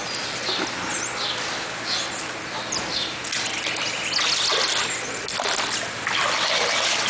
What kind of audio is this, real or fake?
real